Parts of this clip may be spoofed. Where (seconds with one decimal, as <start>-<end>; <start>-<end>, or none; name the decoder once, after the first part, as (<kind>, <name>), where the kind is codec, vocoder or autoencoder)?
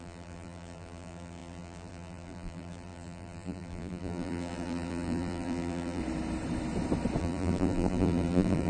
0.0-6.0 (vocoder, BigVGAN v2); 7.2-8.7